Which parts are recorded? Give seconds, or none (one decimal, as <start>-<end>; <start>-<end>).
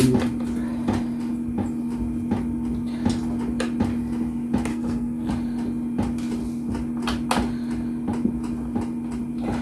0.0-4.7; 5.3-9.6